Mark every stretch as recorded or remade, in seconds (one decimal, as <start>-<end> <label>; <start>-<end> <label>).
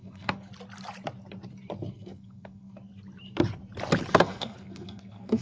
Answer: 0.0-0.5 remade; 0.5-1.9 recorded; 1.9-2.9 remade; 2.9-4.1 recorded; 4.1-5.4 remade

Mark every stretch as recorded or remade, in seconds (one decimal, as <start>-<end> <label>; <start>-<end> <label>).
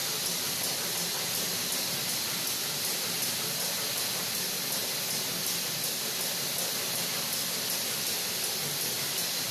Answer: 0.0-9.5 recorded